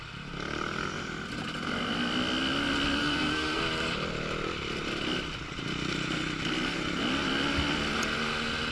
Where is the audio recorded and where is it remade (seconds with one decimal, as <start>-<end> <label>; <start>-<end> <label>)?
0.0-3.0 recorded; 3.0-3.6 remade; 3.6-8.7 recorded